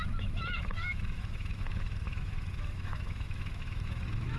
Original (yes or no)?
no